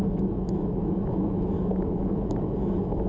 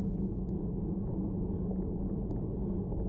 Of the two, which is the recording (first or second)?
second